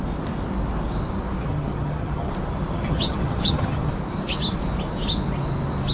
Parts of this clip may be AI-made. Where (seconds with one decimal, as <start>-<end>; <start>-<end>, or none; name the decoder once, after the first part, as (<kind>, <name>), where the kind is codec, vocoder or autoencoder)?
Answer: 1.5-2.3 (vocoder, HiFi-GAN); 2.7-3.9